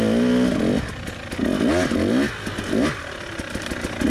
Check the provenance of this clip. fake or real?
real